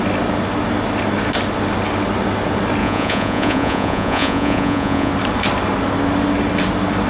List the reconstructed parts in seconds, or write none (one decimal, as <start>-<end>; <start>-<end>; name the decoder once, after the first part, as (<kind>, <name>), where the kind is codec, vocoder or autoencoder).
2.8-5.1 (vocoder, Vocos)